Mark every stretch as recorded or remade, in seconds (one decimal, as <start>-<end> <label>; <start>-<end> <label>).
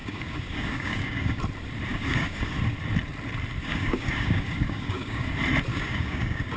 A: 0.0-1.4 remade; 1.4-1.9 recorded; 1.9-2.5 remade; 2.5-3.6 recorded; 3.6-5.3 remade; 5.3-5.7 recorded; 5.7-6.6 remade